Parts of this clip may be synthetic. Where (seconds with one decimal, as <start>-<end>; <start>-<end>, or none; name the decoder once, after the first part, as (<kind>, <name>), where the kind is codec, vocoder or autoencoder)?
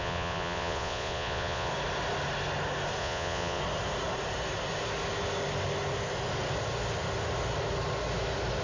0.0-1.7 (vocoder, Vocos); 3.0-3.6